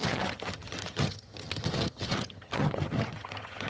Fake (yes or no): yes